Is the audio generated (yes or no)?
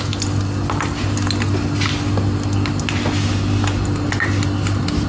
no